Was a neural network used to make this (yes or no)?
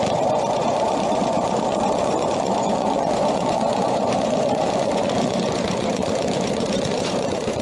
yes